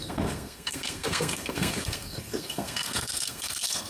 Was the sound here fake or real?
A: fake